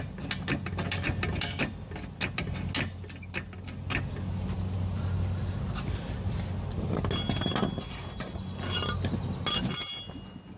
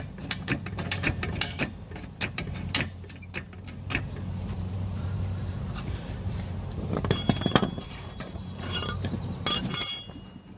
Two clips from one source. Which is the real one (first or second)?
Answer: first